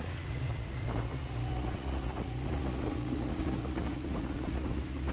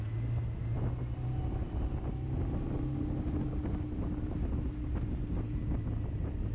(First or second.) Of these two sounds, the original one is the second